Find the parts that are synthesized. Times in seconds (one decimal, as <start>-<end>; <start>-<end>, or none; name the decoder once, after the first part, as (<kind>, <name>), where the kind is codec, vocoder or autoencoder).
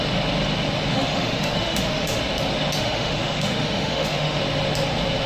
0.9-2.2 (autoencoder, DAC-VAE); 2.8-4.4